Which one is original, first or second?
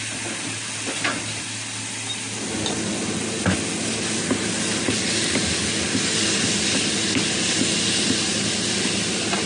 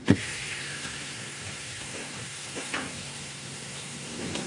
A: first